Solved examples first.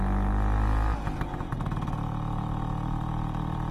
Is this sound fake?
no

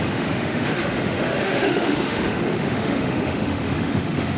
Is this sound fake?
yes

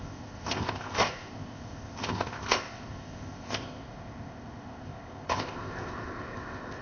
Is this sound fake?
yes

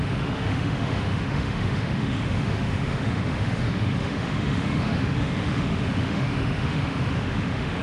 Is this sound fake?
yes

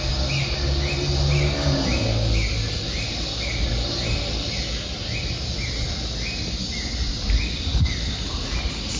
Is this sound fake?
no